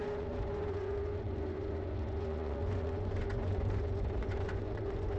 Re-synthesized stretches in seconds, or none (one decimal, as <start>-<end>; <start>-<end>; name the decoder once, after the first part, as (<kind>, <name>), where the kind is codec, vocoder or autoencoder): 0.0-5.2 (vocoder, Vocos)